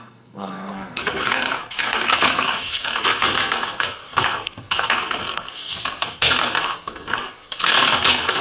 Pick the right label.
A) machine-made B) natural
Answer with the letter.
A